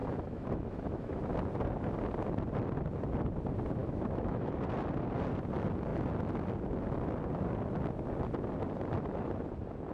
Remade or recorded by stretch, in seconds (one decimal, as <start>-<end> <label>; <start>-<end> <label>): 0.0-1.2 remade; 1.2-3.8 recorded; 3.8-4.5 remade; 4.5-9.9 recorded